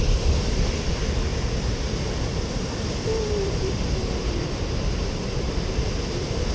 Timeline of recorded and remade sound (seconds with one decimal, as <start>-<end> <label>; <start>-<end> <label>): 0.0-1.3 remade; 1.3-2.4 recorded; 2.4-6.5 remade